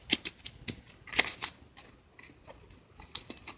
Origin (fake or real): real